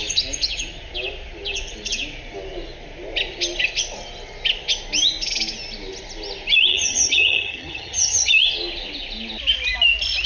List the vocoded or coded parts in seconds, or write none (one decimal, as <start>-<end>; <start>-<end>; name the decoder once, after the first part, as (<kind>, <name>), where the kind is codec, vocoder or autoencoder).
6.7-8.3 (vocoder, HiFi-GAN)